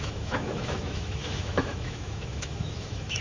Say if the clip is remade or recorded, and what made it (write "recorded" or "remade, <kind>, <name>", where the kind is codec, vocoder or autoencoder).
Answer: remade, autoencoder, DAC-VAE